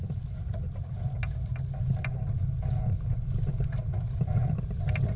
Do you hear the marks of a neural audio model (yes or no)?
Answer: no